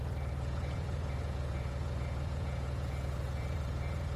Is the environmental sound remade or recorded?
remade